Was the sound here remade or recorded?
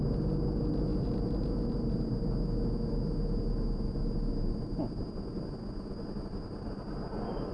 recorded